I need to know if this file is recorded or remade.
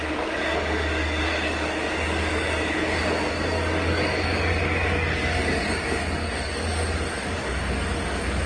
remade